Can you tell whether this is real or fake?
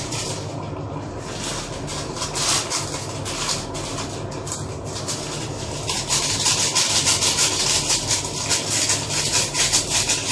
real